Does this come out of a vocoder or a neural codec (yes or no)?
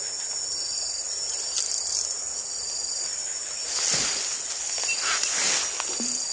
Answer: no